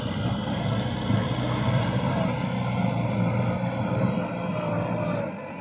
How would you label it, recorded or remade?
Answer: recorded